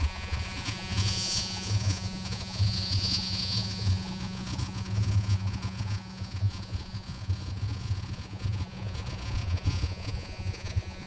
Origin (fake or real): fake